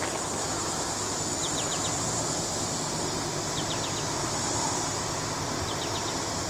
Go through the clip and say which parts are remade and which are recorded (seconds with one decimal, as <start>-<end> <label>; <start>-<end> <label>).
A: 0.0-6.5 recorded